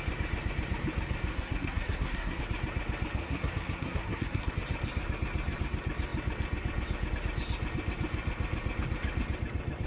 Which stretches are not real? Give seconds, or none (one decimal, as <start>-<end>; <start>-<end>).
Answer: 1.3-2.4; 3.2-4.5